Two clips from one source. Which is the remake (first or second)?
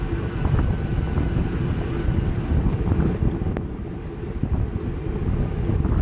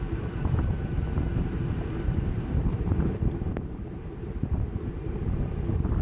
second